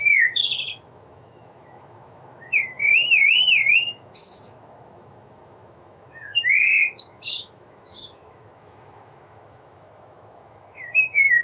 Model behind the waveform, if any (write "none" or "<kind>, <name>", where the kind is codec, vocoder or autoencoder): autoencoder, DAC-VAE